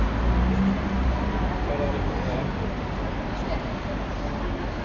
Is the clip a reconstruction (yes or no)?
no